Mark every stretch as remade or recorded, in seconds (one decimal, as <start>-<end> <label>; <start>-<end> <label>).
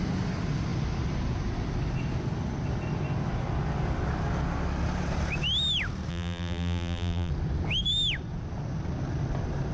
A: 0.0-6.1 recorded; 6.1-7.3 remade; 7.3-9.7 recorded